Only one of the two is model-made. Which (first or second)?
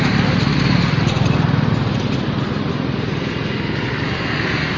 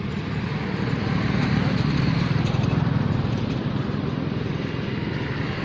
second